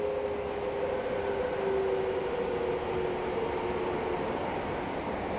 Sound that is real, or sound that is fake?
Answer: real